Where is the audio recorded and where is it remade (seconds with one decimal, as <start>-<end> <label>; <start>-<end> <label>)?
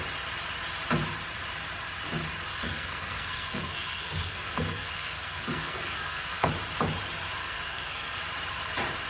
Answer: 0.0-2.5 recorded; 2.5-6.5 remade; 6.5-7.4 recorded; 7.4-8.2 remade; 8.2-9.1 recorded